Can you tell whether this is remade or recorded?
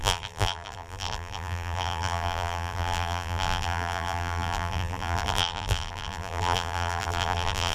remade